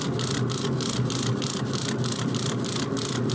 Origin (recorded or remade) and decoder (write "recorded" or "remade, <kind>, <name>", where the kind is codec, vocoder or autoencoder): recorded